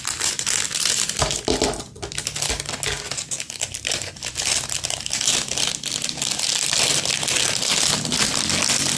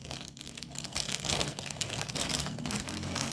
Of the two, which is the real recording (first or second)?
first